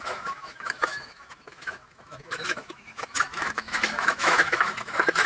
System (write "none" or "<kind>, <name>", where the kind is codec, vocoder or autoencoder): autoencoder, DAC-VAE